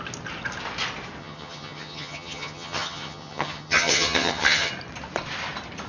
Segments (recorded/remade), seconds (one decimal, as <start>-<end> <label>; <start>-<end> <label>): 0.0-1.2 recorded; 1.2-4.7 remade; 4.7-5.9 recorded